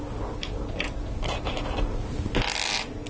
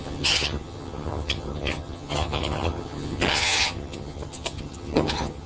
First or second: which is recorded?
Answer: first